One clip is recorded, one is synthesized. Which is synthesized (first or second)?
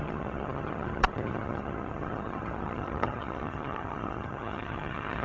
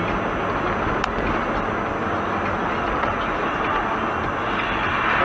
first